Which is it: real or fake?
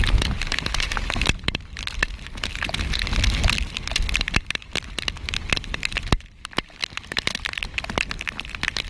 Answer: real